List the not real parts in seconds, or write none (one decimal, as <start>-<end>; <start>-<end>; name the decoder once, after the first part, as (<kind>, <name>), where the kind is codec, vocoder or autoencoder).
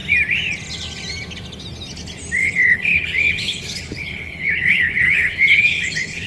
2.4-6.3 (codec, HILCodec)